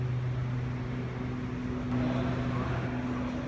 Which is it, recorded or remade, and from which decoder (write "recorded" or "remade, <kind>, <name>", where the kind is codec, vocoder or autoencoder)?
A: recorded